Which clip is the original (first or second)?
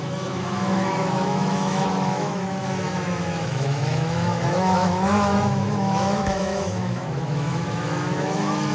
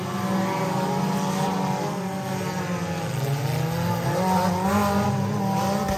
second